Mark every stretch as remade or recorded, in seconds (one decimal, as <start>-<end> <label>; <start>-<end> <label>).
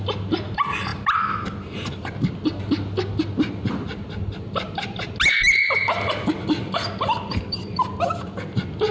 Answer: 0.0-8.9 recorded